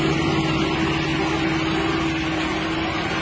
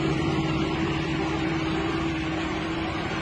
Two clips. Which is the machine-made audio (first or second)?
second